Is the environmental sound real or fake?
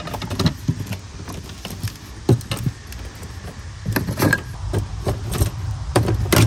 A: real